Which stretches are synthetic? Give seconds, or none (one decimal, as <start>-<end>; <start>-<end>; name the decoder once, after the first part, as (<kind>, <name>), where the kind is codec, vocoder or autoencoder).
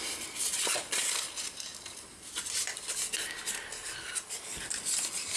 none